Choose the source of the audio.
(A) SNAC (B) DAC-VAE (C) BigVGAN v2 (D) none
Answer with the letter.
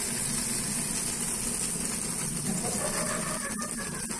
D